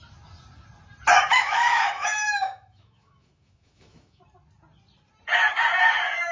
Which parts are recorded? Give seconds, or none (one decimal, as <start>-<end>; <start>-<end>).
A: 0.0-1.3; 4.2-6.3